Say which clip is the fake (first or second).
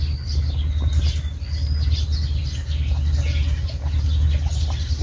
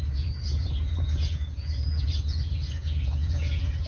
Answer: second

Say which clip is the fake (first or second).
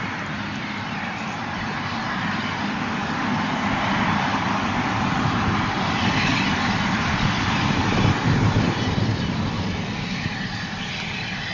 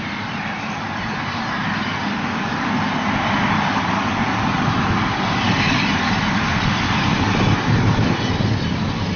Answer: first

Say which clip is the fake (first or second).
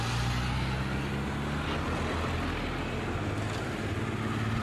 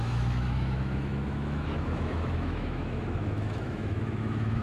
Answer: second